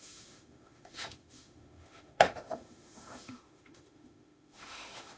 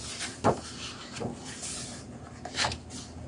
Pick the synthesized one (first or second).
first